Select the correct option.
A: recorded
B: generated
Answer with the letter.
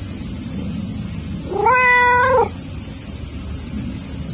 A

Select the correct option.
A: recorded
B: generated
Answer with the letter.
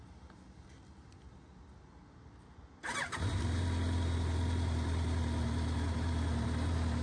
A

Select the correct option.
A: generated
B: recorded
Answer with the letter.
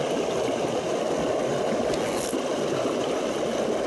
B